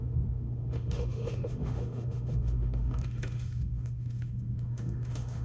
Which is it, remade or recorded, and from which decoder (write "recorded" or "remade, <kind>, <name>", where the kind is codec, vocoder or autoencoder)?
remade, autoencoder, DAC-VAE